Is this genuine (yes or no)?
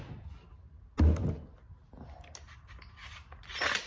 yes